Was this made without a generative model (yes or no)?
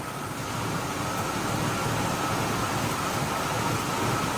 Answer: yes